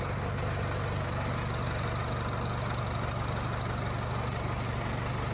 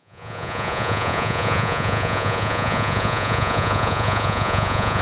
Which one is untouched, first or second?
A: first